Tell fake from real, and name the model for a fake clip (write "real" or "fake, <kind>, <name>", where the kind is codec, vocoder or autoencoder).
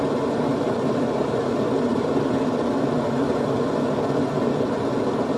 fake, vocoder, BigVGAN v2